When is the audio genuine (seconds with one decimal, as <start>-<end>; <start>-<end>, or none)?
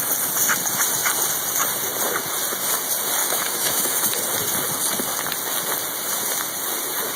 0.0-3.2; 4.1-7.2